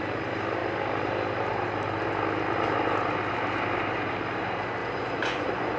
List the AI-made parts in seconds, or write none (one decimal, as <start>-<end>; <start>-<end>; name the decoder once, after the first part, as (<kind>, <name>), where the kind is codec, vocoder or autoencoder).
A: 4.8-5.8 (vocoder, Vocos)